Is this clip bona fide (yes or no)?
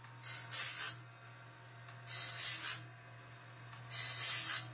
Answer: yes